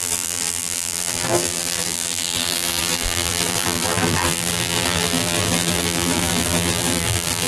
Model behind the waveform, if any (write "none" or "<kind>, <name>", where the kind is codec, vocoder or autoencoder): vocoder, BigVGAN v2